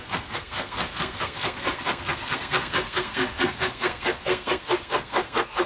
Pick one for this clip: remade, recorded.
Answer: remade